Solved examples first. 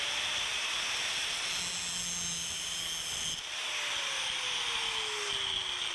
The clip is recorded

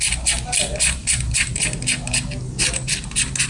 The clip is recorded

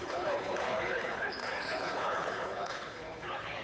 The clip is remade